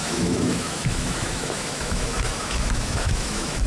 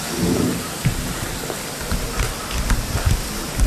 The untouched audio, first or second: second